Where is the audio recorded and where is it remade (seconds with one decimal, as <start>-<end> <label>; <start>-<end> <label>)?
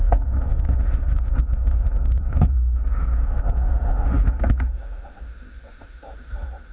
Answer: 0.0-6.7 remade